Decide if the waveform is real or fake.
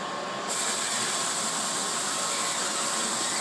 real